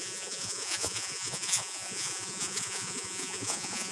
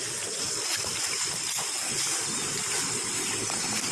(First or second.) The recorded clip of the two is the second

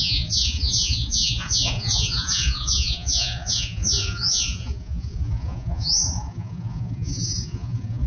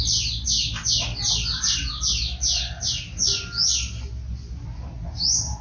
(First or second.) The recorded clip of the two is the second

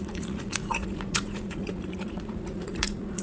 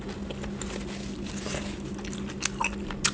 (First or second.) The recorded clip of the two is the second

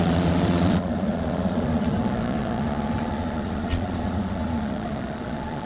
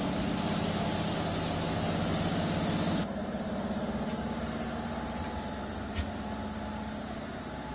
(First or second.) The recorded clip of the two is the second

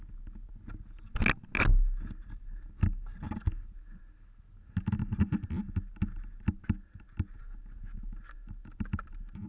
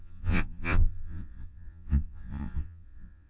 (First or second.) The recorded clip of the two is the first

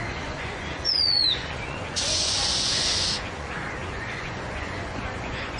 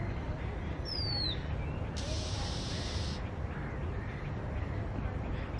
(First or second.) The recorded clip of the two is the second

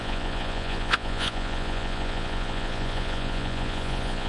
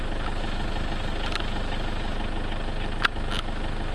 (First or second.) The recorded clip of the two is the second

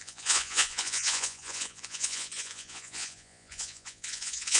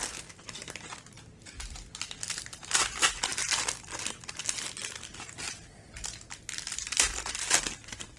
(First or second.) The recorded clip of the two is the second